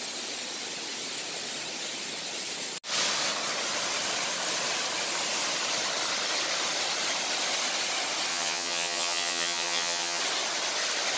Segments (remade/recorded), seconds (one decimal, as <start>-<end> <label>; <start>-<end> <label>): 0.0-8.3 recorded; 8.3-10.2 remade; 10.2-11.2 recorded